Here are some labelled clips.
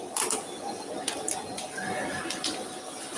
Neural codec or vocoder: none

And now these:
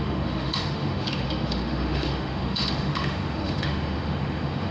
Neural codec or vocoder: autoencoder, DAC-VAE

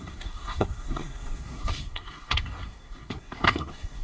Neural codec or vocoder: codec, SNAC